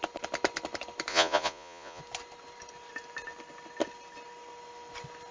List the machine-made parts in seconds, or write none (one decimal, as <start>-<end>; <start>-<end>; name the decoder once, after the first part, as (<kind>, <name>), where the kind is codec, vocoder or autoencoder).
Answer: 1.1-2.0 (vocoder, Vocos)